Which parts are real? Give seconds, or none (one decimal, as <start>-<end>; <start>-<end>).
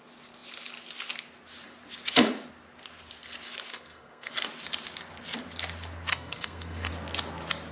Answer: 0.0-3.7; 4.3-6.1; 6.9-7.7